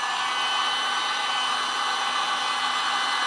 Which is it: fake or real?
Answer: real